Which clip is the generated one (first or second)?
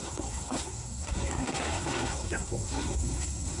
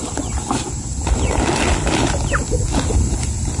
first